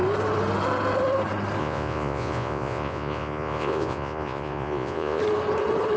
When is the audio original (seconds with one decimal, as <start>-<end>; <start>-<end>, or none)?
0.0-1.6; 5.2-6.0